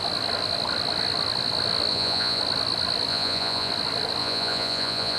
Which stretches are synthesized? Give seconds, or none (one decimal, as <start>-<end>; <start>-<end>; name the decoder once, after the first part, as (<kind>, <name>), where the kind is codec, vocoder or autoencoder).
1.9-2.4 (vocoder, Vocos); 3.1-3.7; 4.2-5.2